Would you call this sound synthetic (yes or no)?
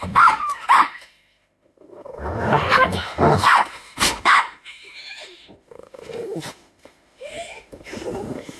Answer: yes